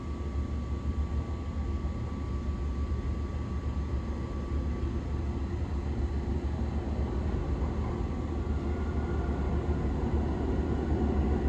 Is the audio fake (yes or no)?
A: no